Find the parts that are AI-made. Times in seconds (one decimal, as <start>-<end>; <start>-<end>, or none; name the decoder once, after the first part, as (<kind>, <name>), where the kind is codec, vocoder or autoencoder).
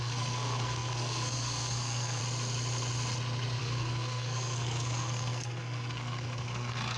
0.0-2.2 (codec, SNAC); 3.6-7.0